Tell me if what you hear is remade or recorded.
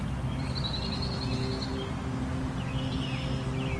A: recorded